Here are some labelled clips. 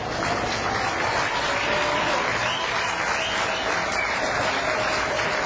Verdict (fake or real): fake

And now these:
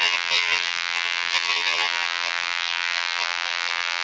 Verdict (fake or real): fake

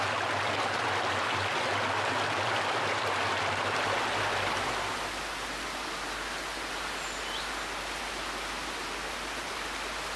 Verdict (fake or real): real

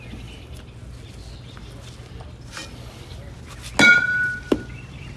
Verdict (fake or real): real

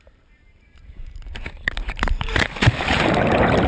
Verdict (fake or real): fake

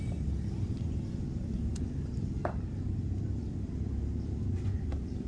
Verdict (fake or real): fake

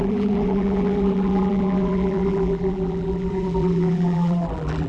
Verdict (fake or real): fake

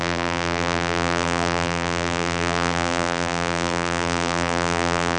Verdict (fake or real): fake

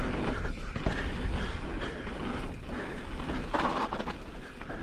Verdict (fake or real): real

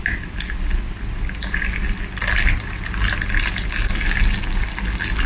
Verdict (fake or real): real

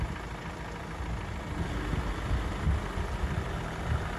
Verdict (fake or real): real